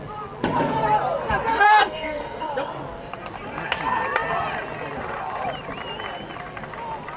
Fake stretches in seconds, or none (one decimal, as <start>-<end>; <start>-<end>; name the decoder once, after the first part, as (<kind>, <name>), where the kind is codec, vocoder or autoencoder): 1.5-2.5 (codec, SNAC)